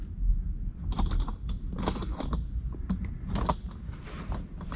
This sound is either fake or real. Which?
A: real